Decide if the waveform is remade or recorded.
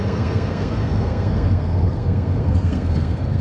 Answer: remade